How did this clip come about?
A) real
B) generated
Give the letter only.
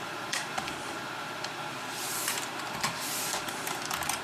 B